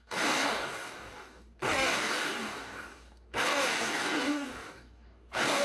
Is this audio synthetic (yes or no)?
yes